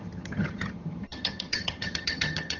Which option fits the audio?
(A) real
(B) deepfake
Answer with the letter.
B